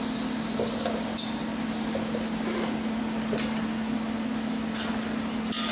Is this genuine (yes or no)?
yes